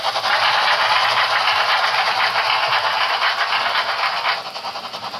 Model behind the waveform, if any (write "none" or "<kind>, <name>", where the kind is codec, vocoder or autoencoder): none